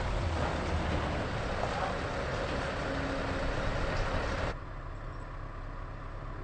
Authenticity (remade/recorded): recorded